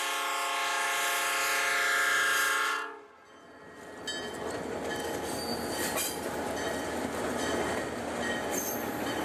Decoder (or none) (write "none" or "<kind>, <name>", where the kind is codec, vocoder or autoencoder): none